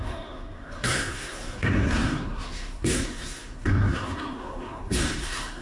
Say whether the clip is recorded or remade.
remade